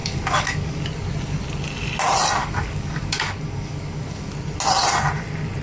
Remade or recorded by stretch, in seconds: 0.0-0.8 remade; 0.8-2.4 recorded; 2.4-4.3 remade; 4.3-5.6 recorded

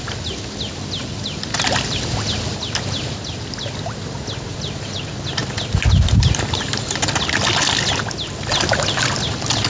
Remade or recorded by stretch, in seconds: 0.0-9.7 recorded

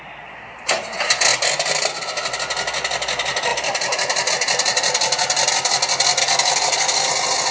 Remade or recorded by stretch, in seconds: 0.0-6.2 recorded; 6.2-7.1 remade; 7.1-7.5 recorded

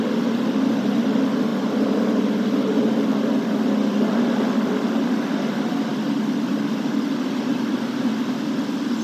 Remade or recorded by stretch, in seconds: 0.0-9.0 recorded

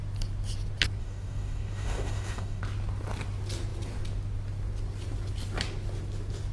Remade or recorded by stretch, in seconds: 0.0-1.0 recorded; 1.0-2.6 remade; 2.6-6.5 recorded